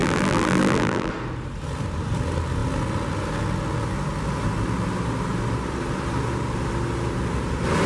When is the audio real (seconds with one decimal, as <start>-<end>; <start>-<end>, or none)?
1.1-7.9